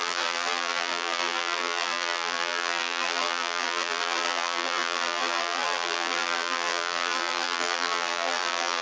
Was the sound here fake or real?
fake